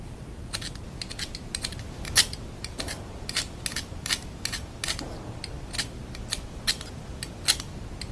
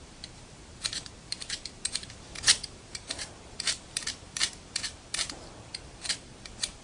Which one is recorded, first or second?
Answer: first